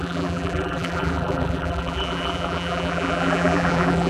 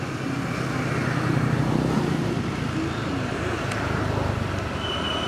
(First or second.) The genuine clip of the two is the second